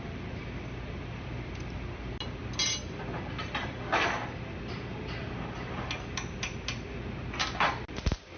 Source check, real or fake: real